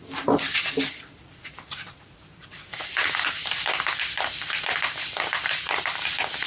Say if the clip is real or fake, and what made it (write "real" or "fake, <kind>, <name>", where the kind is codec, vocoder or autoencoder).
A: fake, vocoder, BigVGAN v2